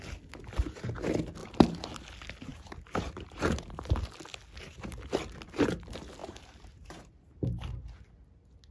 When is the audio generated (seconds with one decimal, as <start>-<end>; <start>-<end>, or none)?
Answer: 1.4-2.0; 2.5-3.8; 6.2-8.0